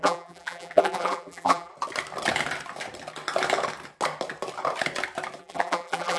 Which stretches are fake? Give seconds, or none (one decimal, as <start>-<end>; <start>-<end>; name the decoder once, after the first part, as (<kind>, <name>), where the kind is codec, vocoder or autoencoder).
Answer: 0.0-1.7 (vocoder, BigVGAN v2); 5.4-6.2